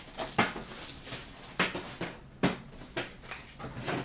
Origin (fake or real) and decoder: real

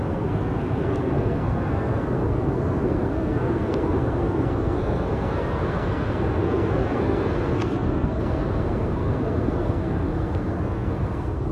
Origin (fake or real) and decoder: fake, codec, SNAC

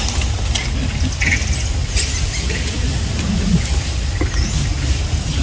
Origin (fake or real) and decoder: real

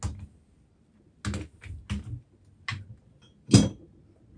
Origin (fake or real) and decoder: real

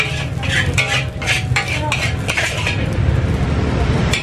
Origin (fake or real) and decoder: real